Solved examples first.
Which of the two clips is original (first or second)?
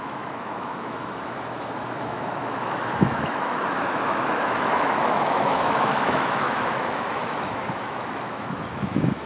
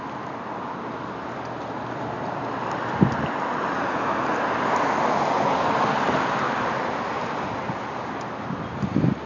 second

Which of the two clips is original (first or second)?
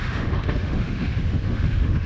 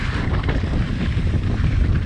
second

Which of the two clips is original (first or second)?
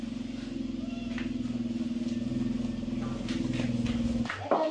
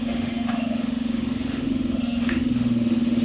first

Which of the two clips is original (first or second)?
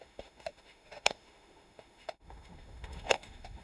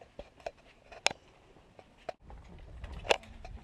second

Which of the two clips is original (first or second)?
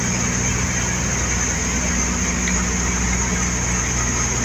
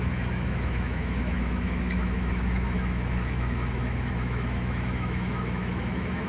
first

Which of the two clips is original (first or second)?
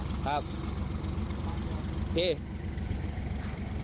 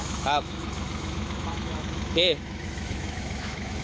first